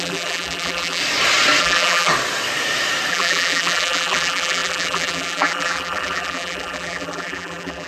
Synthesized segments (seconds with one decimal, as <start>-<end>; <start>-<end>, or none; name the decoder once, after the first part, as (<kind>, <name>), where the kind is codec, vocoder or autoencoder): 0.0-1.0 (vocoder, BigVGAN v2); 1.6-2.1; 3.1-7.9